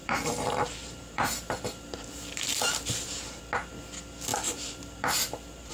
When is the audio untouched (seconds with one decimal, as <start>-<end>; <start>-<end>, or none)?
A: 3.4-4.3